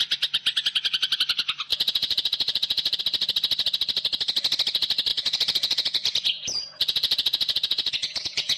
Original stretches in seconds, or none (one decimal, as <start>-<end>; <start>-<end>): 0.0-1.7; 3.0-5.1